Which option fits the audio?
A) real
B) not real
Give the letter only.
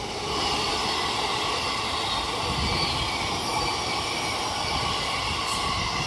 A